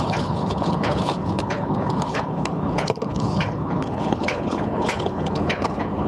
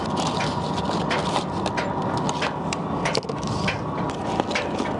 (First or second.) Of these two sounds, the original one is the second